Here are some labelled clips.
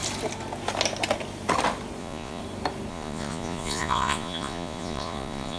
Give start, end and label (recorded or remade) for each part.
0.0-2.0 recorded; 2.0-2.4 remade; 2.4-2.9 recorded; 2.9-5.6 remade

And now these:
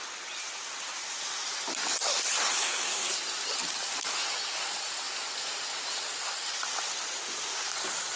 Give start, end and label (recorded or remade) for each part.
0.0-2.5 recorded; 2.5-3.1 remade; 3.1-8.2 recorded